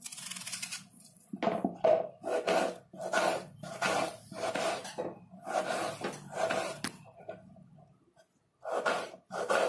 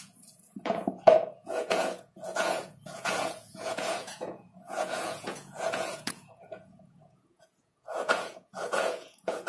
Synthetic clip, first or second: second